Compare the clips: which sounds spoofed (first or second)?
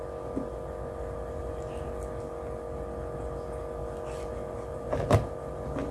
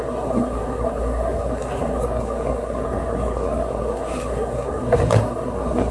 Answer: second